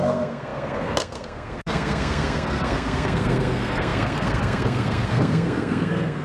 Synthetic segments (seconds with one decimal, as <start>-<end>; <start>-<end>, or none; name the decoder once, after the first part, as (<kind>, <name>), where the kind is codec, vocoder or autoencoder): 0.0-6.2 (codec, SNAC)